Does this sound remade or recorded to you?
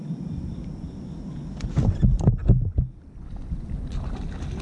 recorded